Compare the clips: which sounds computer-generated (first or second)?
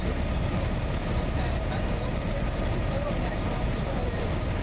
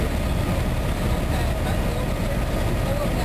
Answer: first